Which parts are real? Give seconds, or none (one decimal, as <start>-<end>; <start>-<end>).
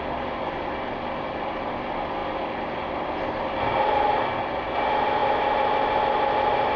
0.0-6.8